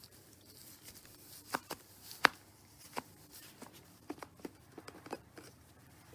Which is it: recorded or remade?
remade